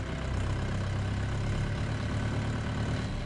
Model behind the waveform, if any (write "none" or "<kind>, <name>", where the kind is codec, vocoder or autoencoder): none